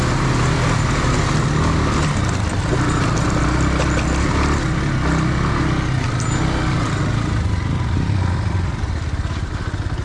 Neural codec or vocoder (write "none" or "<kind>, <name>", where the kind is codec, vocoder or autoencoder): none